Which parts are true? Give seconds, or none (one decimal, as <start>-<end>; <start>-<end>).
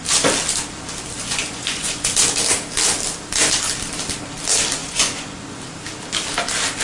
0.0-1.2; 2.1-4.8; 5.6-6.8